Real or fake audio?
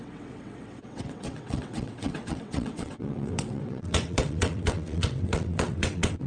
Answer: fake